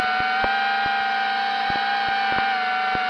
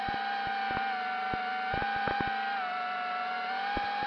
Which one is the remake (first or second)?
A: second